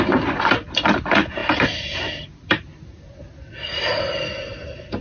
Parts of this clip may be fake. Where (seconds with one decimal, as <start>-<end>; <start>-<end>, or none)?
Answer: none